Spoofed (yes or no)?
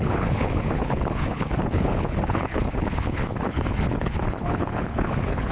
yes